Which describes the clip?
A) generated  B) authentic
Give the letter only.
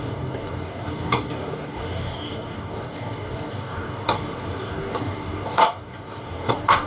A